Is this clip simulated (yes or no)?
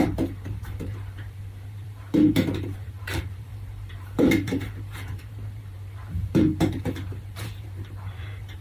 yes